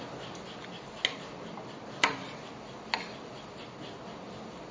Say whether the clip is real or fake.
real